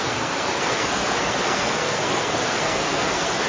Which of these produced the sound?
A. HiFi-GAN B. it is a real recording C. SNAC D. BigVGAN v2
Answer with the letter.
C